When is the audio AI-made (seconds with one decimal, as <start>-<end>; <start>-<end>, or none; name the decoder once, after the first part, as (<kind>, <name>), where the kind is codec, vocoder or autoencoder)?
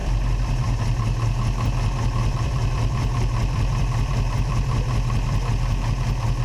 0.0-0.8 (vocoder, BigVGAN v2); 2.2-5.5